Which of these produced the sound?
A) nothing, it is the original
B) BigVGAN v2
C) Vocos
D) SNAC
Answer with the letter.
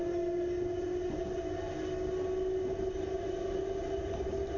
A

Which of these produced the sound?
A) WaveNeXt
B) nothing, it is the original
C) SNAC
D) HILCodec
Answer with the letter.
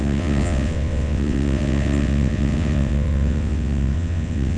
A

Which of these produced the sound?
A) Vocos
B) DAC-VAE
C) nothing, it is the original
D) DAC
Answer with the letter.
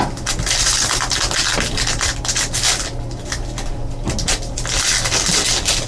C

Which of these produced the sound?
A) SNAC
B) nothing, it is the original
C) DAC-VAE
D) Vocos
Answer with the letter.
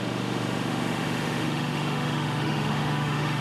C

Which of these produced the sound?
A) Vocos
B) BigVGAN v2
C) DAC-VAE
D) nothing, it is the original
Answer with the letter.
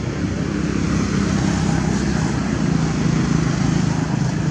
D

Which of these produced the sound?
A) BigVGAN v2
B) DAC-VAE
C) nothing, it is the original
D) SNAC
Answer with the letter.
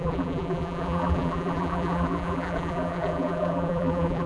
A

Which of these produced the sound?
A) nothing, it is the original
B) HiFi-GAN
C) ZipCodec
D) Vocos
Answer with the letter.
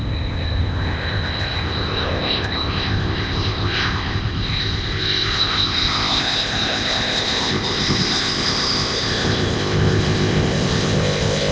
C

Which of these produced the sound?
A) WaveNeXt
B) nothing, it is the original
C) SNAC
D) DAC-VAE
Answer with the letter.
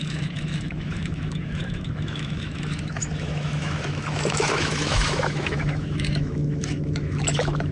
D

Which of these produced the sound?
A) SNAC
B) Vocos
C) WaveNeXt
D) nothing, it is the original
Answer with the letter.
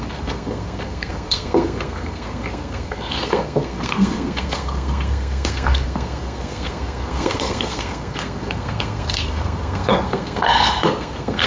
A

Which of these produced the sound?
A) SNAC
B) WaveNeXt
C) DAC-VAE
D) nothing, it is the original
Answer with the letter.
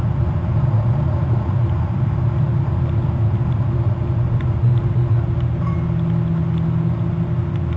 D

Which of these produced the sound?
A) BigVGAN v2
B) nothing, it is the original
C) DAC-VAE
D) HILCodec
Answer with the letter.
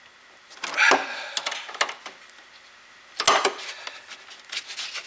B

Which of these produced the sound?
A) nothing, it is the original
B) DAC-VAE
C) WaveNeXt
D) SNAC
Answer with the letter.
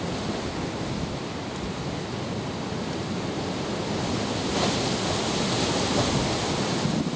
A